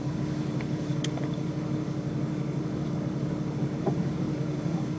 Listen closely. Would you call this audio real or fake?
fake